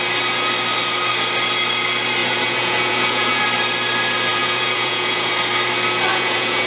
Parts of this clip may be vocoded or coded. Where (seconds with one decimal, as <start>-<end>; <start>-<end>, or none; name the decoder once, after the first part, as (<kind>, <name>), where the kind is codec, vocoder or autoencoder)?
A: 2.2-3.4 (vocoder, Vocos); 4.4-5.3; 6.1-6.7